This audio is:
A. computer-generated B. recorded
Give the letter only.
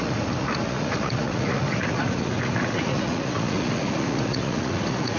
A